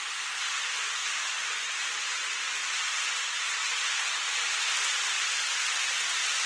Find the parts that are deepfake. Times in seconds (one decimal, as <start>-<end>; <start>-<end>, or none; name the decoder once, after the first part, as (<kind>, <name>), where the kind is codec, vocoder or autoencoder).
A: none